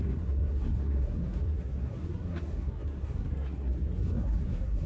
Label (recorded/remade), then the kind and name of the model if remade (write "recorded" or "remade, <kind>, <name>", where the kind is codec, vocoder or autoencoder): remade, codec, SNAC